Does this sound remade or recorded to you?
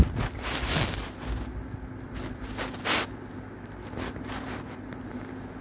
recorded